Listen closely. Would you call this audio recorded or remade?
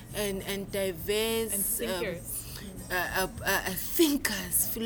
recorded